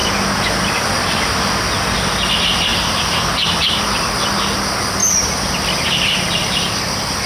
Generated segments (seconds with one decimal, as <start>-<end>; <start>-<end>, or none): 2.7-3.6; 5.0-6.8

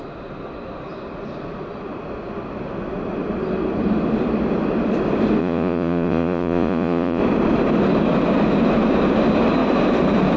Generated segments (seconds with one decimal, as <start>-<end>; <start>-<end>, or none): 5.4-7.2